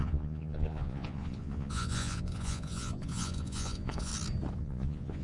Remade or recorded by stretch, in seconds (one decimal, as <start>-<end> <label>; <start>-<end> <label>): 0.0-4.1 remade; 4.1-4.6 recorded; 4.6-5.2 remade